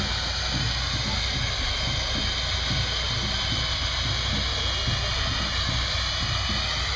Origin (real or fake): real